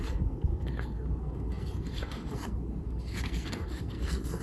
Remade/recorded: remade